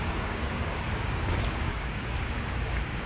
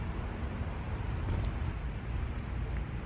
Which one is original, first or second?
second